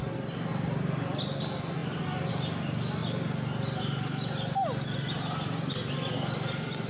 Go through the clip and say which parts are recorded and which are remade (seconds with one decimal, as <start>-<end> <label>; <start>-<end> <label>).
0.0-6.9 recorded